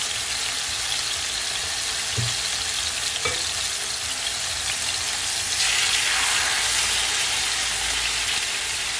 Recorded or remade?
recorded